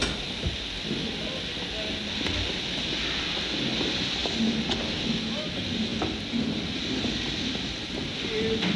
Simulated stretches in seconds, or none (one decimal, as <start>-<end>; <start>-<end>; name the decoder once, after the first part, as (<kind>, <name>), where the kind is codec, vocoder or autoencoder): none